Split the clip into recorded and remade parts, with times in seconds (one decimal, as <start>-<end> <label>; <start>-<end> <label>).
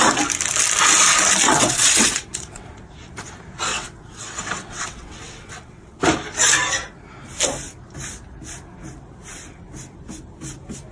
0.0-1.5 recorded; 1.5-2.7 remade; 2.7-3.7 recorded; 3.7-6.0 remade; 6.0-10.9 recorded